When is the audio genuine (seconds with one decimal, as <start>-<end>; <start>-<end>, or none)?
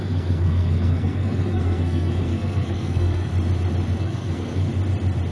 3.3-4.0; 4.7-5.3